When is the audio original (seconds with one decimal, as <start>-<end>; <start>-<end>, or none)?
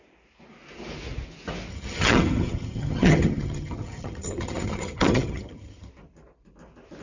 0.0-1.7; 5.9-7.0